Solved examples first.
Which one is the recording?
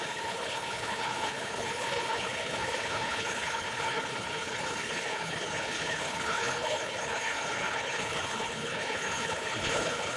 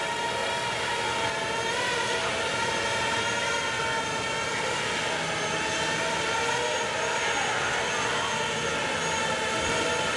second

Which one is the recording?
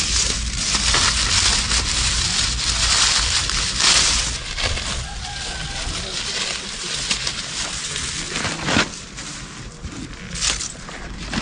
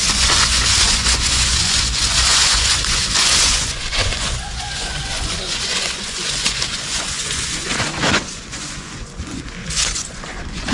first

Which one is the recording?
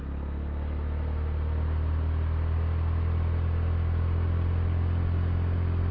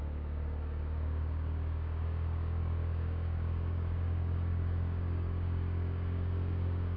first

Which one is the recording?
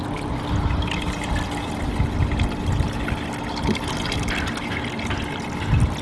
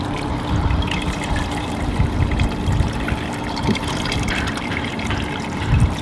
first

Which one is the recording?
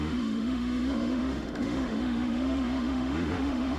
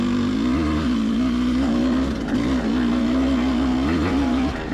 second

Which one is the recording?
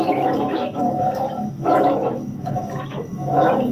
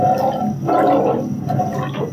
second